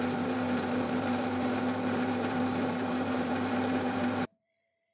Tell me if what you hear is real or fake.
fake